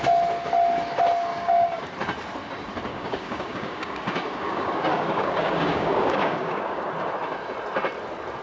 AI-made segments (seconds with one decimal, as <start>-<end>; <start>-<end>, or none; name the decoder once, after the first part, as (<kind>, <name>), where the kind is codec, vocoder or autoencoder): 1.3-1.8 (codec, DAC); 2.9-6.9